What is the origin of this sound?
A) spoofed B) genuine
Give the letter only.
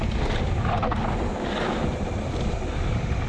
B